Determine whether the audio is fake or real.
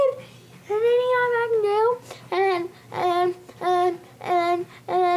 real